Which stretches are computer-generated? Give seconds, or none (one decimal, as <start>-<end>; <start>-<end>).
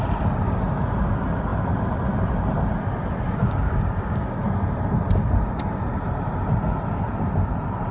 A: 3.4-4.4